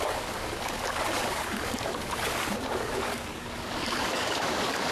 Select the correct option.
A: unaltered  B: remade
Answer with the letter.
B